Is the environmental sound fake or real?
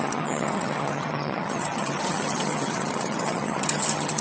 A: fake